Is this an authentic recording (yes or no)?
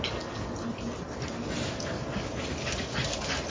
yes